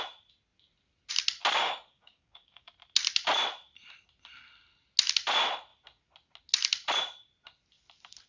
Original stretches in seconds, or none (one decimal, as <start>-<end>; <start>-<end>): 0.0-1.6; 2.7-8.3

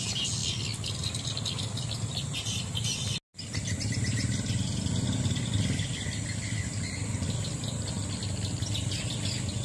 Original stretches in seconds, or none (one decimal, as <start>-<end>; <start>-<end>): 0.0-9.6

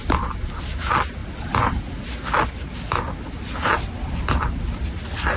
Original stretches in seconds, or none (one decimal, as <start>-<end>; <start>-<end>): 0.0-5.4